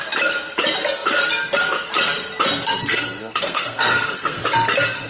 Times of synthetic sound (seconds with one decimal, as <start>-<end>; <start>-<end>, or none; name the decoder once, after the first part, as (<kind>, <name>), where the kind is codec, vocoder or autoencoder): 2.8-4.4 (codec, SNAC)